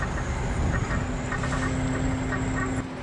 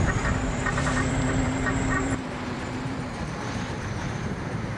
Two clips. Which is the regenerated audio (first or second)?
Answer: second